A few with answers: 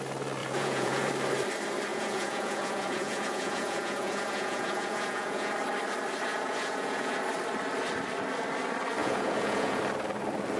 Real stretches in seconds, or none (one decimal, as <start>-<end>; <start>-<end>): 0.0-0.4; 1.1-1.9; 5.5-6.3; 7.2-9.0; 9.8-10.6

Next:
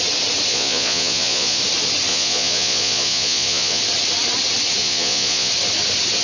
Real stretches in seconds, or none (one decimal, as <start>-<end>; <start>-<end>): 0.0-0.5; 1.6-2.1; 3.8-4.8; 5.5-6.2

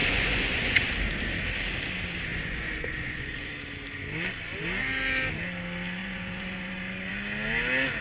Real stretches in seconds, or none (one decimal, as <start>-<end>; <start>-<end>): 0.9-2.3; 3.5-6.0; 7.1-8.0

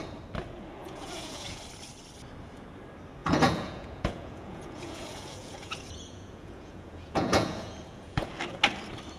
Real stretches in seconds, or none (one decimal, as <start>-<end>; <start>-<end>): 0.0-0.8; 1.6-3.2; 8.3-9.2

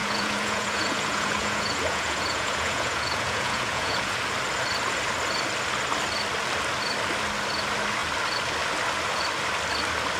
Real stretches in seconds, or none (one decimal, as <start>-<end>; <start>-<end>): 4.2-10.2

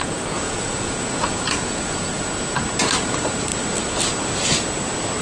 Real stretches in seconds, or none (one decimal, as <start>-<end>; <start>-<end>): 2.2-5.2

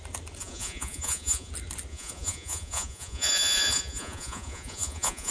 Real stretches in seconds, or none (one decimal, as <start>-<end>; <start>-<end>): 0.0-0.4; 1.5-1.9

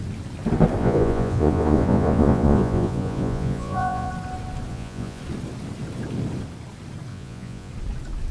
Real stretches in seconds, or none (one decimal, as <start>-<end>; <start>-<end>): 0.0-0.8; 4.1-4.7; 5.2-7.1; 7.7-8.3